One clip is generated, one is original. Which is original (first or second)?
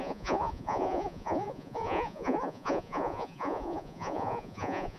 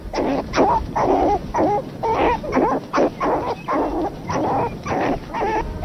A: second